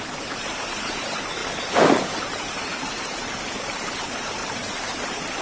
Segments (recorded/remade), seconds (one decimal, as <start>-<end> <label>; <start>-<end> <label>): 0.0-5.4 remade